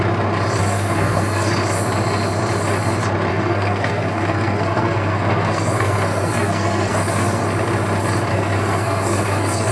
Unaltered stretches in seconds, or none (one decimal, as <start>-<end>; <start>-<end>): 0.0-0.6; 1.5-3.3; 7.4-8.3